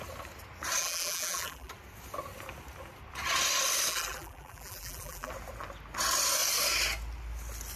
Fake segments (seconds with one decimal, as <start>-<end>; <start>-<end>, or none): 0.8-1.7; 3.9-5.3

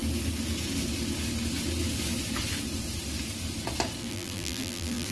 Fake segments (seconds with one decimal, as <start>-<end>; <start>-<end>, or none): 4.0-5.1

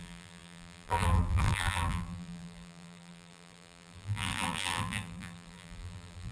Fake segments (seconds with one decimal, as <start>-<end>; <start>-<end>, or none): 0.0-6.3